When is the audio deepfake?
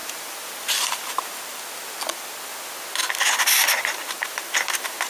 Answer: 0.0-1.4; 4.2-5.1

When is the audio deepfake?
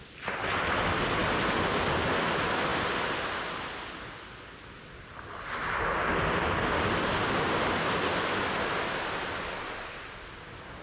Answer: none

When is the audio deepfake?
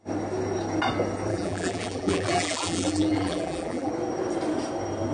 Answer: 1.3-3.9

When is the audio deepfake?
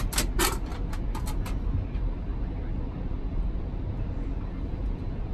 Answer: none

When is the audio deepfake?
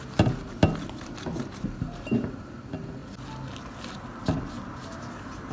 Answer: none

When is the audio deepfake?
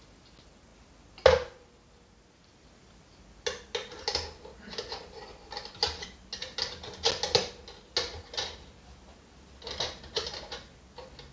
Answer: none